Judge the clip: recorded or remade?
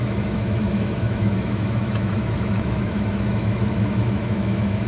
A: remade